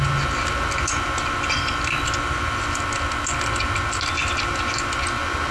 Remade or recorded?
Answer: recorded